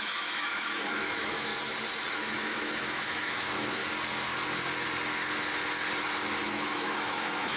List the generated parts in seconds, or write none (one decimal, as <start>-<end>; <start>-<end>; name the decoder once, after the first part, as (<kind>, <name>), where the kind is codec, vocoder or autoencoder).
0.0-1.5 (autoencoder, DAC-VAE); 2.1-3.8; 6.4-7.6